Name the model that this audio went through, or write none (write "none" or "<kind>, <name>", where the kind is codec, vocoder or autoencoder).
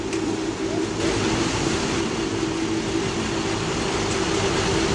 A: none